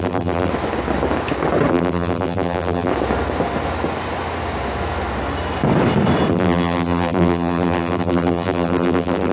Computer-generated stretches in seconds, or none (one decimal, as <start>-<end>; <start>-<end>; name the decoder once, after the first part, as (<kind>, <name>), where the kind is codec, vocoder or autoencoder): 0.0-0.5 (vocoder, BigVGAN v2); 1.7-2.9; 6.3-9.3